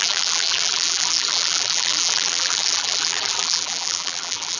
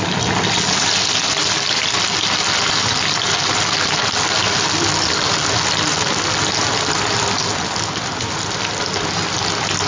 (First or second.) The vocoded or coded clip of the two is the first